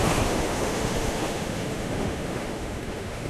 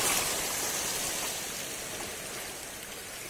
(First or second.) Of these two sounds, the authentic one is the second